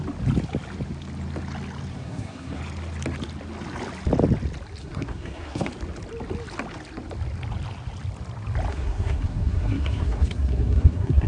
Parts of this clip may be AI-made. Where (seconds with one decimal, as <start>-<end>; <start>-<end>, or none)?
1.9-2.6; 4.8-5.7; 8.7-11.3